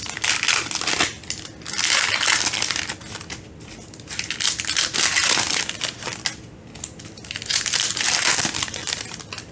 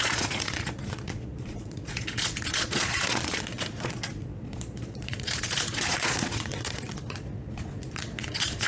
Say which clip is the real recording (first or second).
first